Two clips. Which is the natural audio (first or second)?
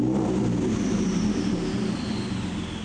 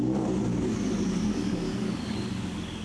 first